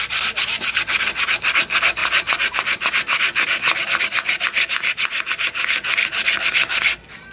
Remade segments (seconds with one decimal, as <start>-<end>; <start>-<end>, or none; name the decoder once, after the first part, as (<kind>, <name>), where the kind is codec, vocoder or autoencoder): none